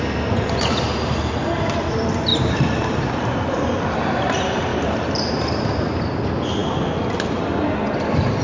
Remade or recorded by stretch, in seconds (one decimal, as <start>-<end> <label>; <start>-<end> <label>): 0.0-2.3 recorded; 2.3-3.1 remade; 3.1-4.7 recorded; 4.7-5.3 remade; 5.3-8.4 recorded